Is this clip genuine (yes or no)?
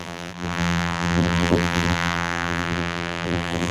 no